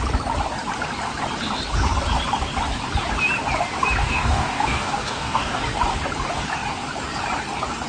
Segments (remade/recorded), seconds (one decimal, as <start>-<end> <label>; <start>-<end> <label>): 0.0-4.0 recorded; 4.0-5.6 remade; 5.6-7.9 recorded